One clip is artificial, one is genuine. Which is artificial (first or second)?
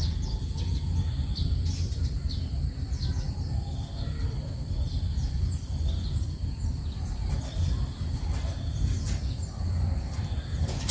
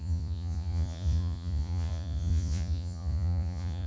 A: second